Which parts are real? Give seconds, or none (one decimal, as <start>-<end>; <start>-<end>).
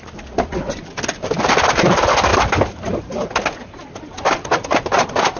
0.0-5.4